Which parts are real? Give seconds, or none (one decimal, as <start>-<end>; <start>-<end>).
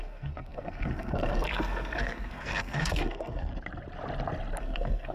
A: 3.5-4.6